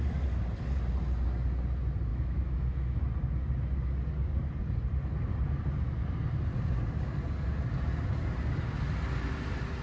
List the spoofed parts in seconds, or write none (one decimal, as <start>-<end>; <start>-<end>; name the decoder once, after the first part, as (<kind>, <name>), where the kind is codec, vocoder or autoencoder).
2.1-3.0 (autoencoder, DAC-VAE)